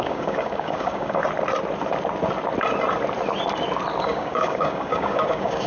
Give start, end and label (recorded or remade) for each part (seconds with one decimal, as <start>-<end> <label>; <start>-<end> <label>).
0.0-1.2 remade; 1.2-4.0 recorded; 4.0-5.7 remade